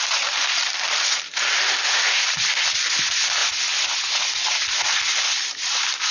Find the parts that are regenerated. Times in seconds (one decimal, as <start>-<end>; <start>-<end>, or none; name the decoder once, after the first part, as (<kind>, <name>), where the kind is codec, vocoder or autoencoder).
none